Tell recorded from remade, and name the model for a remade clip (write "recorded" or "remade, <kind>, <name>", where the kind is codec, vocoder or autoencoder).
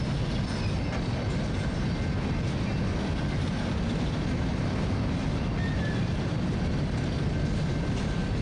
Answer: recorded